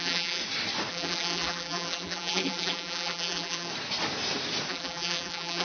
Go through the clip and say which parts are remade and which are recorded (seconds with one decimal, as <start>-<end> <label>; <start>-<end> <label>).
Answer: 0.0-0.4 remade; 0.4-0.9 recorded; 0.9-3.7 remade; 3.7-4.7 recorded; 4.7-5.6 remade